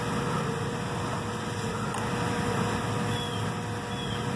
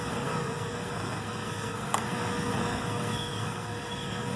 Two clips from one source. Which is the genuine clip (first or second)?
first